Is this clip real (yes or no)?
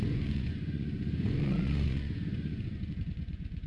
no